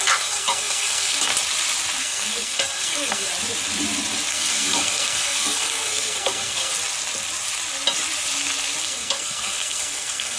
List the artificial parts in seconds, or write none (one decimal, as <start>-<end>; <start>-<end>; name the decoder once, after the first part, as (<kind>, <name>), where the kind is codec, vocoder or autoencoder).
0.0-1.3 (codec, SNAC); 2.0-3.3; 4.3-6.7; 8.8-10.4